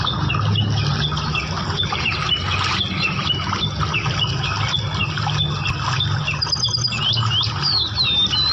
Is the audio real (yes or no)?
yes